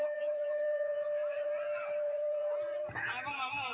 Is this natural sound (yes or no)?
no